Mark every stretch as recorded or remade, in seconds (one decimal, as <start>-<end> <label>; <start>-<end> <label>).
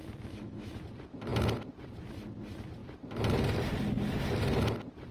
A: 0.0-0.8 remade; 0.8-5.1 recorded